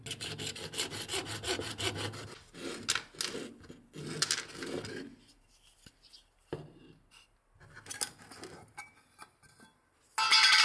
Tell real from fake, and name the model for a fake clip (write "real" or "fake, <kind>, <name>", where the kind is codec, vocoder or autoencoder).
real